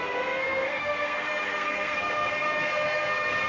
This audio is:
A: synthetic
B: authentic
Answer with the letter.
A